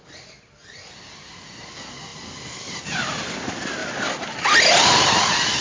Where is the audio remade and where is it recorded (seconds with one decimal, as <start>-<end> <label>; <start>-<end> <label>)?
0.0-2.1 recorded; 2.1-2.8 remade; 2.8-3.8 recorded; 3.8-5.0 remade; 5.0-5.6 recorded